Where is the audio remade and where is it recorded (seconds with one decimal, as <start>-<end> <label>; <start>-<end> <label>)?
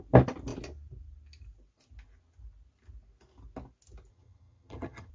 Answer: 0.0-4.1 recorded; 4.1-5.1 remade